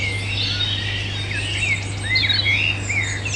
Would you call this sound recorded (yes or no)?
yes